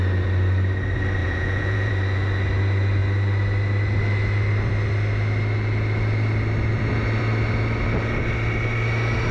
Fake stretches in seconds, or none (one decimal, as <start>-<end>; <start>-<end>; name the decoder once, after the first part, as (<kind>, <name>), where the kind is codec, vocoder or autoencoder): 1.2-1.9 (vocoder, Vocos)